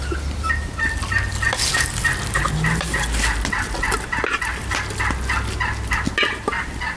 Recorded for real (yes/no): yes